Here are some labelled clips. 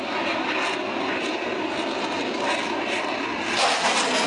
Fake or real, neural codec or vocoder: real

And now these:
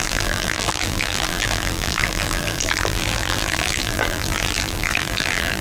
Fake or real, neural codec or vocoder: fake, vocoder, BigVGAN v2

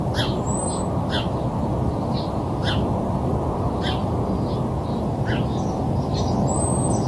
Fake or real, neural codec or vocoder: real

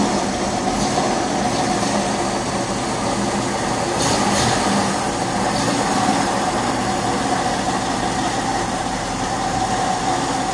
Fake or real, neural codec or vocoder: real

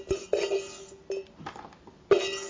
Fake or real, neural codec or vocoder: real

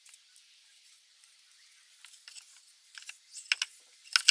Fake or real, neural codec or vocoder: real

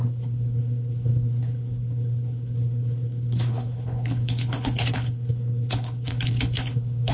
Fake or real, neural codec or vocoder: fake, codec, HILCodec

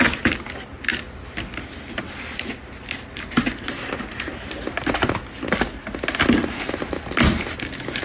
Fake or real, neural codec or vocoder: real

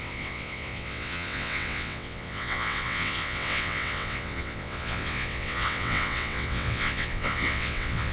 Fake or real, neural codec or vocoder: fake, vocoder, WaveNeXt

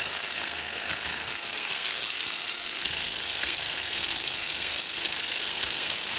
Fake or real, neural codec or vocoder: fake, codec, SNAC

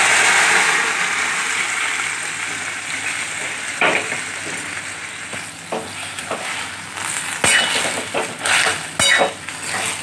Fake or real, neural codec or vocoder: real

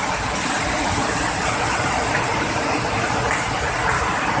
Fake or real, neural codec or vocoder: real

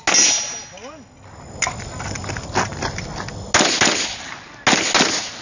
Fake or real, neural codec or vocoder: real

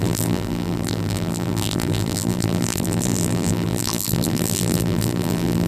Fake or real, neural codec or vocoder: fake, vocoder, BigVGAN v2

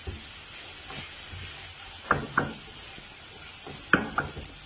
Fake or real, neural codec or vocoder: real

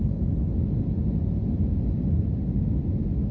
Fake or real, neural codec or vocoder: real